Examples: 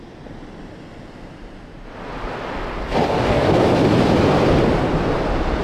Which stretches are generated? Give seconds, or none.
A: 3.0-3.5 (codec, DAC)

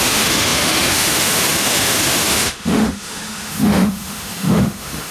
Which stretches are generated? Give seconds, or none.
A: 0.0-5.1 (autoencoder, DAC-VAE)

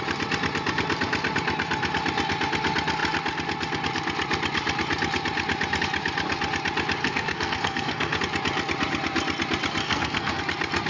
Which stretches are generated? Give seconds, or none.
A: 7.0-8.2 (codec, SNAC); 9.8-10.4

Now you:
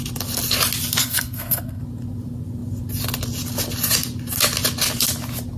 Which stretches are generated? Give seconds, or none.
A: 1.0-1.8 (codec, SNAC)

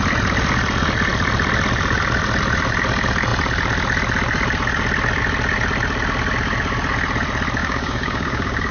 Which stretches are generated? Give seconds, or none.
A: 7.6-8.7 (codec, DAC)